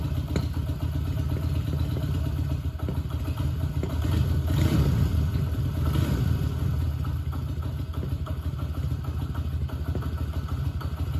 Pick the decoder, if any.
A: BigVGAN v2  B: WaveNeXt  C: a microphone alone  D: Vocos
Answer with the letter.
C